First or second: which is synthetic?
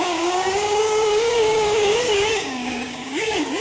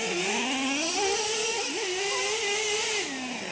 first